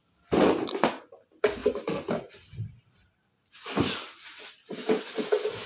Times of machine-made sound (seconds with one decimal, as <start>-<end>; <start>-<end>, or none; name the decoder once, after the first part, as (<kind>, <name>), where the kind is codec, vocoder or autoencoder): none